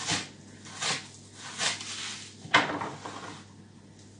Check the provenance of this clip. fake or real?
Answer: real